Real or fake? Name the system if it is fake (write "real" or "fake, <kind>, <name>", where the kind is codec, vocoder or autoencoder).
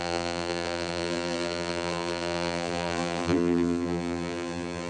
fake, vocoder, BigVGAN v2